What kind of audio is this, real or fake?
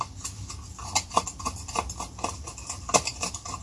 real